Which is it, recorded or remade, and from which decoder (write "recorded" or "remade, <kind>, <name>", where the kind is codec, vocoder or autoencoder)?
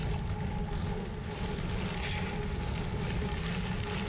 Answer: recorded